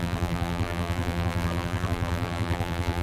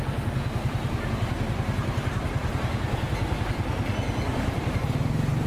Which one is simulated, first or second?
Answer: first